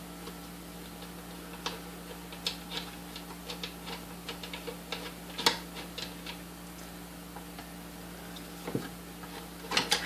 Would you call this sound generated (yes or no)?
no